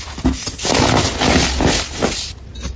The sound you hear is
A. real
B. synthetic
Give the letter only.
A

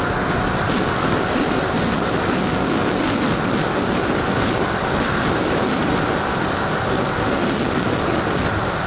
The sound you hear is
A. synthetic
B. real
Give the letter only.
B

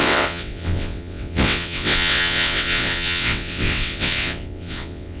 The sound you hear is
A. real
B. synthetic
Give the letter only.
B